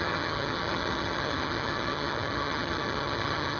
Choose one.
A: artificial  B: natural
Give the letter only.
A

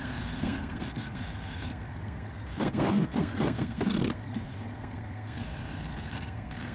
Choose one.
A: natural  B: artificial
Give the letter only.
B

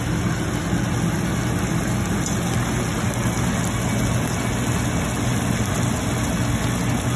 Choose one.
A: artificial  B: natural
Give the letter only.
B